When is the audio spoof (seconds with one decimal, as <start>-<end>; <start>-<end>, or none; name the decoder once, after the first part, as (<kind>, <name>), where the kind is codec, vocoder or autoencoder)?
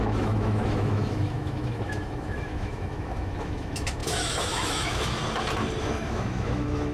0.0-5.2 (autoencoder, DAC-VAE); 5.8-6.9